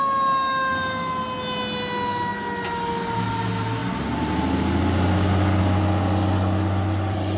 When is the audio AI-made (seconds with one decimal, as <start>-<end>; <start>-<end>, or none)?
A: none